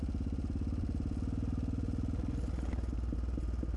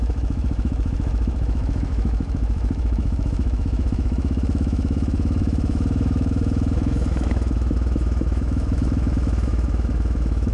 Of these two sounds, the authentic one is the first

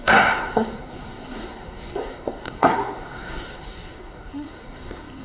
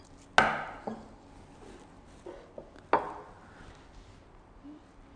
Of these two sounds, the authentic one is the second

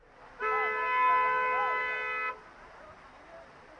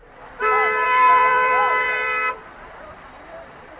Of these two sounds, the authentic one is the first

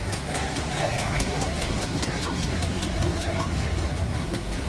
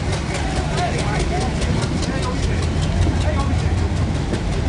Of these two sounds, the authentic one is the second